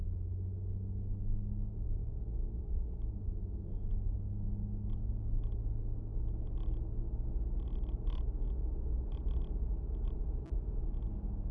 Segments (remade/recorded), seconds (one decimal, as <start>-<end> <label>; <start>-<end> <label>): 0.0-11.5 recorded